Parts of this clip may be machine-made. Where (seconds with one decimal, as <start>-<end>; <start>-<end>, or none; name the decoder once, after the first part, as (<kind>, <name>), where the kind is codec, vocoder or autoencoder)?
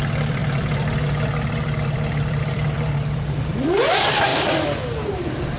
0.0-5.6 (vocoder, BigVGAN v2)